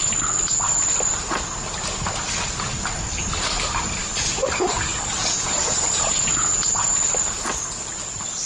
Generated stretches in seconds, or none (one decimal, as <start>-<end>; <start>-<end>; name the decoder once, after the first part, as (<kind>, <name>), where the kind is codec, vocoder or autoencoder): 5.2-6.9 (vocoder, Vocos)